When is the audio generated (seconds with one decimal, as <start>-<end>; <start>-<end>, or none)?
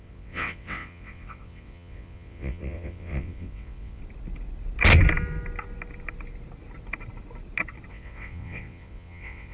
0.0-4.0; 7.9-9.5